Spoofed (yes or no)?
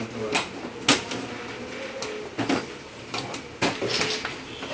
no